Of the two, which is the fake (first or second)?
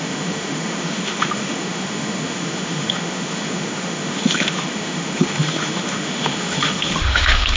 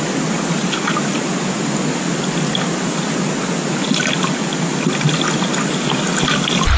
first